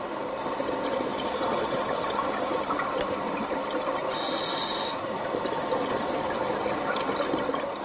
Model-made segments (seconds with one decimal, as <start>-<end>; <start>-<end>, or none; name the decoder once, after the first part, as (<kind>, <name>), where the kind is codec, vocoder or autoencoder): none